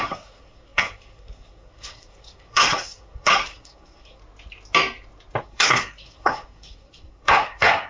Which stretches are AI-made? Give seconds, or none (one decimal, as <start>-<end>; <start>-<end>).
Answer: 0.0-4.2; 5.4-7.9